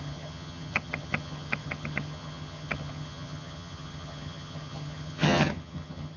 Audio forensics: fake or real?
fake